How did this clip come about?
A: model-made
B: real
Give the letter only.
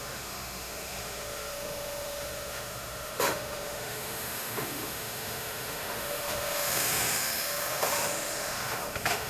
A